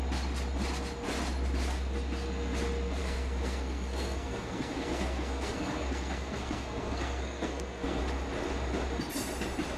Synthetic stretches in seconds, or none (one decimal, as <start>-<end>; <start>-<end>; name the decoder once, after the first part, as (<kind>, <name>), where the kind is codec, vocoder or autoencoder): 3.0-8.0 (codec, SNAC)